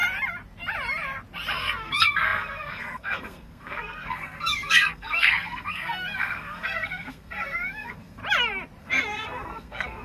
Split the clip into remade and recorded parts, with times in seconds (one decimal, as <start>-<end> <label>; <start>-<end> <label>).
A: 0.0-1.5 recorded; 1.5-8.2 remade; 8.2-8.8 recorded; 8.8-10.0 remade